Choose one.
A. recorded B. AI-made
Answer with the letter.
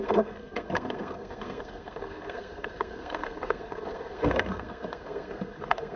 B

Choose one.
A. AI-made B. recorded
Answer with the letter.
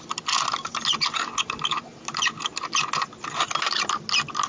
B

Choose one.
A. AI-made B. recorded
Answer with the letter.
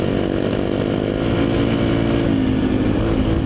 B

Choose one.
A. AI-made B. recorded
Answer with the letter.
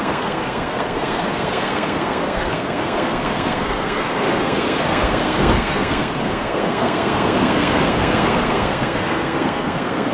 A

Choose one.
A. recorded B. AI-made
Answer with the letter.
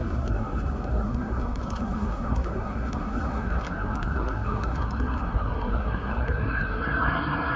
B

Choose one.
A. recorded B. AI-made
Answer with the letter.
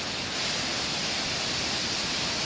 A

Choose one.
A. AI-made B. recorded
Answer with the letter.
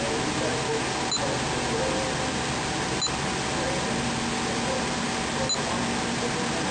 B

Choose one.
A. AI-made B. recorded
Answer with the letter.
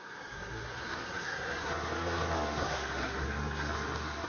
A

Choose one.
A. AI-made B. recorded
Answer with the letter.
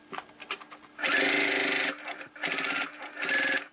B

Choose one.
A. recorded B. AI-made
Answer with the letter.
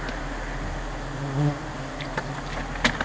A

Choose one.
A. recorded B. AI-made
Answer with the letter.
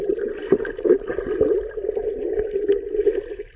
A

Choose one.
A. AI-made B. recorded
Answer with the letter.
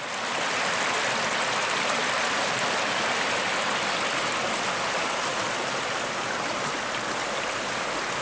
B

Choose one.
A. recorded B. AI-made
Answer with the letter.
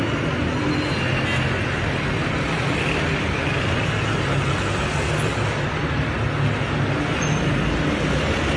A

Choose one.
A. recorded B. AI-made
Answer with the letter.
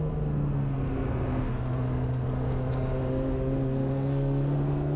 B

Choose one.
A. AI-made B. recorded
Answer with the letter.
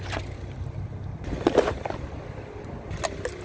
B